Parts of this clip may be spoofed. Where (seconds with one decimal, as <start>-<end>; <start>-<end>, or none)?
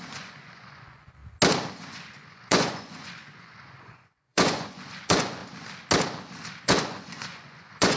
0.0-1.2; 1.8-5.4; 6.6-8.0